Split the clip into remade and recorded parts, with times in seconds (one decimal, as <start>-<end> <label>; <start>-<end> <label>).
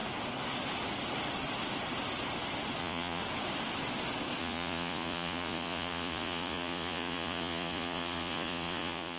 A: 0.0-2.8 recorded; 2.8-3.2 remade; 3.2-4.4 recorded; 4.4-9.2 remade